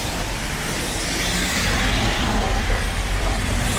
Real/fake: real